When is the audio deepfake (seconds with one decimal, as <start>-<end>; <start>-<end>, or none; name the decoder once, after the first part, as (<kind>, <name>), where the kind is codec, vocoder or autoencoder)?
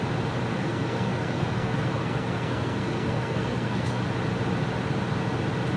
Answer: 0.5-4.0 (codec, SNAC)